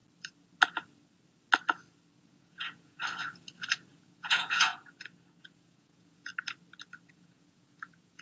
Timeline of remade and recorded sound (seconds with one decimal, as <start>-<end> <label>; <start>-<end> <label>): 0.0-2.2 recorded; 2.2-3.0 remade; 3.0-3.9 recorded; 3.9-4.7 remade; 4.7-5.4 recorded; 5.4-6.3 remade; 6.3-7.1 recorded; 7.1-8.2 remade